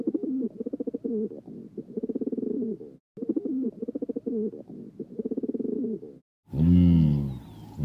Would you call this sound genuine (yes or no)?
yes